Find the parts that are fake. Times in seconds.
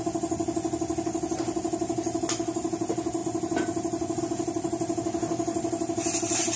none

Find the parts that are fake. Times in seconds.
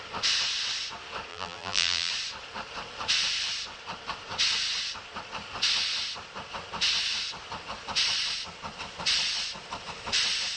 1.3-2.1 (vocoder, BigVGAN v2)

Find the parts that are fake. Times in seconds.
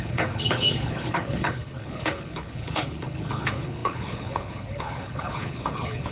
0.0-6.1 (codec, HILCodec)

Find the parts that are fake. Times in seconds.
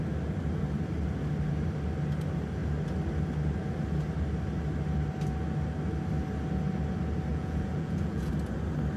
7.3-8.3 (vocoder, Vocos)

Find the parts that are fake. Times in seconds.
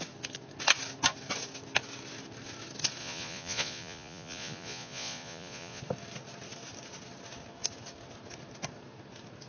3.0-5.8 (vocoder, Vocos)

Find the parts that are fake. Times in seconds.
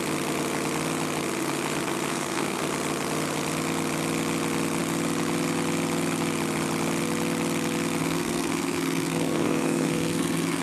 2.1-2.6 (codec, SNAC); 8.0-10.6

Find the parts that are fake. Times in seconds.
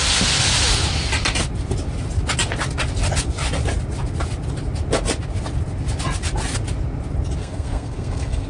7.4-8.5 (codec, SNAC)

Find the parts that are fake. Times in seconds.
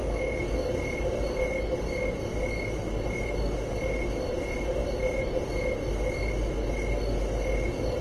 none